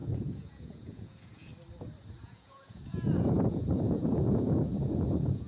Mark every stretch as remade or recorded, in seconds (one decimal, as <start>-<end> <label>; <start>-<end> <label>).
0.0-1.5 remade; 1.5-2.2 recorded; 2.2-5.5 remade